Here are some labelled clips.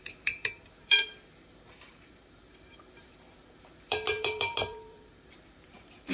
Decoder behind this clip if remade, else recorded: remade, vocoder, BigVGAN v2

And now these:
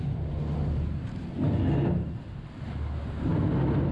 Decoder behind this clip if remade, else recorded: recorded